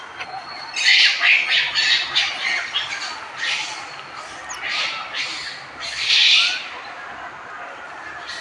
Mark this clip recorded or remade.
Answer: recorded